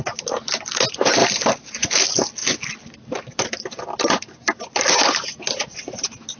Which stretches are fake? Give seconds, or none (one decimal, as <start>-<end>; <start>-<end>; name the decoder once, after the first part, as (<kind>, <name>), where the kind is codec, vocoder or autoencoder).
1.2-1.9 (vocoder, BigVGAN v2)